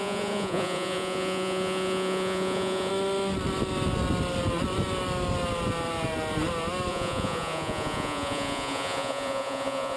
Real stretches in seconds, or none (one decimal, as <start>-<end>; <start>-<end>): 2.9-6.9